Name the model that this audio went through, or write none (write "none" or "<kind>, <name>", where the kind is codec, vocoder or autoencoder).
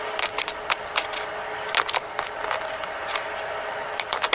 none